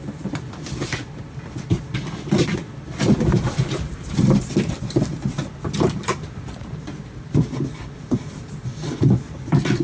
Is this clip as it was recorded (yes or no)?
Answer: no